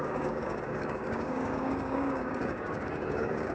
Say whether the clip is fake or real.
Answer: fake